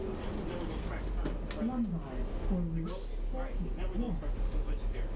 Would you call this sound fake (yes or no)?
no